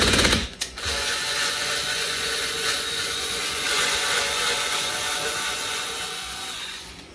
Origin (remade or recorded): remade